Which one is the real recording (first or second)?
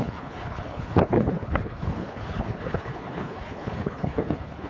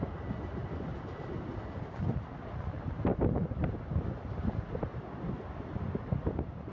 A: second